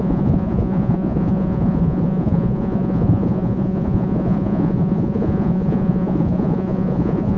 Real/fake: fake